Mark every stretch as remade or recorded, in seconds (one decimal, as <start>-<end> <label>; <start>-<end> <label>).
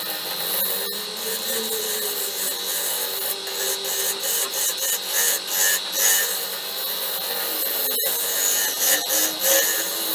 0.0-10.1 recorded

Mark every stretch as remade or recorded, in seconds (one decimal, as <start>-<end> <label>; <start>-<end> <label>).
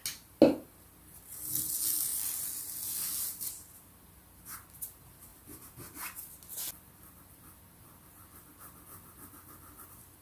0.0-10.2 recorded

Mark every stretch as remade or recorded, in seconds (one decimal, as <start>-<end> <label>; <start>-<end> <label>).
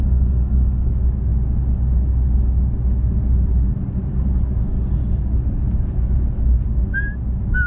0.0-0.9 remade; 0.9-7.7 recorded